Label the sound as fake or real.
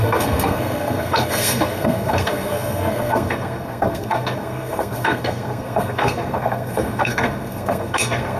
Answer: fake